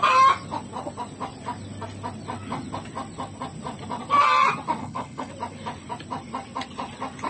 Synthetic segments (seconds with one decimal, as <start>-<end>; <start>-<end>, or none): 4.8-5.3